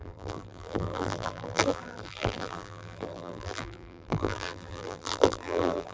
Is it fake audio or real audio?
fake